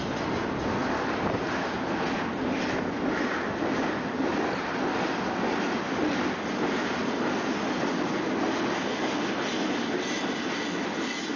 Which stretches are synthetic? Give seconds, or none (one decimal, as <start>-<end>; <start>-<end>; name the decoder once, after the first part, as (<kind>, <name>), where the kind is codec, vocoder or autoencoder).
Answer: none

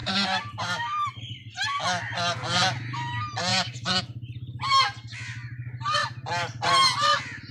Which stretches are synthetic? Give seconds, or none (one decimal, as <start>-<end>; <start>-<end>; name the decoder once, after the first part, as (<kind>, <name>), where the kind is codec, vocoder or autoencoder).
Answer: 0.0-1.2 (vocoder, BigVGAN v2); 3.5-4.0; 6.0-6.6